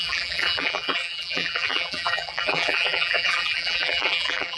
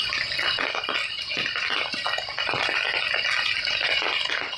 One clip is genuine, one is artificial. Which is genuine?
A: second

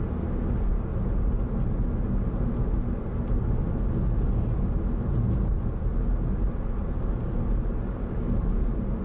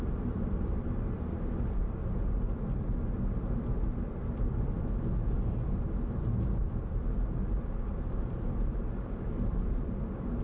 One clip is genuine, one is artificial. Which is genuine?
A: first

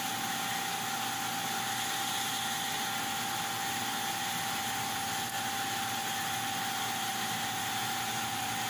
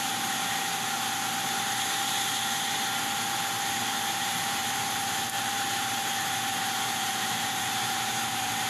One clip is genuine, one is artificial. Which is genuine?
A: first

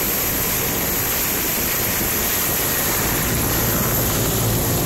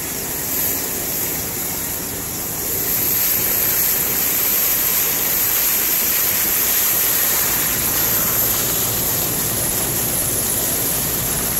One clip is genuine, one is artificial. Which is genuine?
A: first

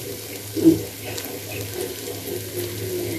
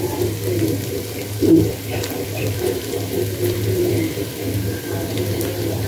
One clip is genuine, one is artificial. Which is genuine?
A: first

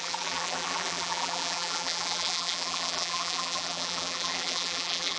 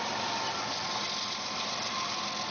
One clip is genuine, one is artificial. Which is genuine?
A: second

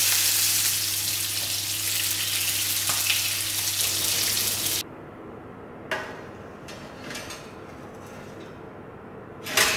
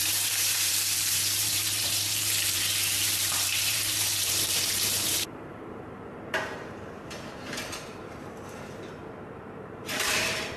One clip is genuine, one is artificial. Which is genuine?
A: first